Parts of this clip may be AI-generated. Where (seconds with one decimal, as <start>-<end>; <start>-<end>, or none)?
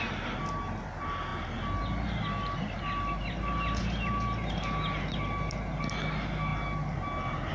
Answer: none